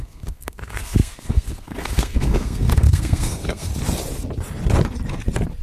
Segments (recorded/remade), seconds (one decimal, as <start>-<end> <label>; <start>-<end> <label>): 0.0-3.7 remade; 3.7-5.6 recorded